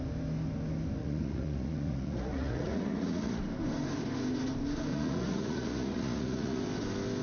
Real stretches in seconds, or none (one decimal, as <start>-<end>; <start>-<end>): 0.0-1.0; 3.4-4.9; 6.6-7.2